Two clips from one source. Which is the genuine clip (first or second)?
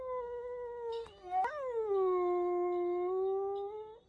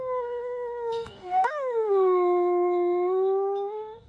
first